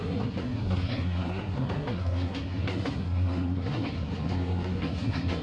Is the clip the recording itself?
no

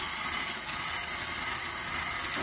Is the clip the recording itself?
yes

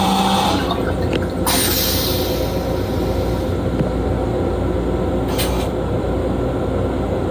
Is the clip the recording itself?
yes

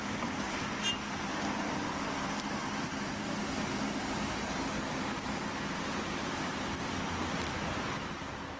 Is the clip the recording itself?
yes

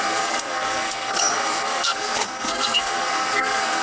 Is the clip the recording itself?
no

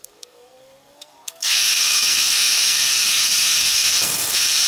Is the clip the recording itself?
no